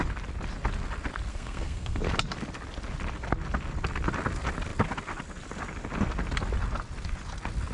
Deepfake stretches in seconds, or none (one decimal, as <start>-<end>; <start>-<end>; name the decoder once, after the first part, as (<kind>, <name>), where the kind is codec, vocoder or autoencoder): 1.3-2.0 (codec, SNAC)